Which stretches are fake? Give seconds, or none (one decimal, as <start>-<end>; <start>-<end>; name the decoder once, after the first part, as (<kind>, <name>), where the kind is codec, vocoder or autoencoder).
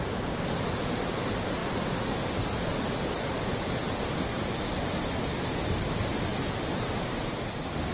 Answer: none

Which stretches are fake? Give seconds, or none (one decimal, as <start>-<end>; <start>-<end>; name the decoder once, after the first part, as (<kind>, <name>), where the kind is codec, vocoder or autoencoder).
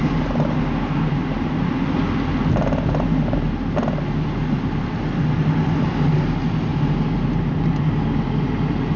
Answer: none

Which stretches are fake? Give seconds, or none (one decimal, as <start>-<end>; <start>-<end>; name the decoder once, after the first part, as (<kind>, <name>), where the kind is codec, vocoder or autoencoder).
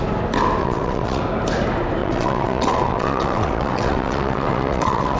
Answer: 0.6-1.2 (vocoder, WaveNeXt); 2.0-5.2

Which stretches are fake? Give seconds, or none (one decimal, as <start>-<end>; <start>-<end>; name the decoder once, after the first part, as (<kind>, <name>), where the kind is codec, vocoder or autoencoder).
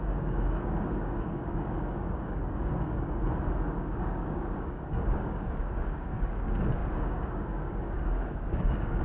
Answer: 0.0-3.2 (codec, DAC); 3.8-9.0